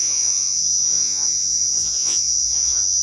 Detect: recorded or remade remade